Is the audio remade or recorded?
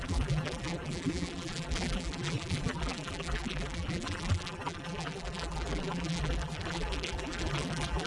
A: remade